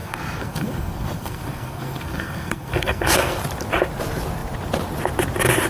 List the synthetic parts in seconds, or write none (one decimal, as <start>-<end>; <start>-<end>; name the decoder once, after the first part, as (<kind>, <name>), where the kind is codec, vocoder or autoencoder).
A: 0.0-3.4 (codec, SNAC)